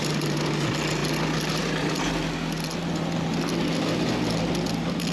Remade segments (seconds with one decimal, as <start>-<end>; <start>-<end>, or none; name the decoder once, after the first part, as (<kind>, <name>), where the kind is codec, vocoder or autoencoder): none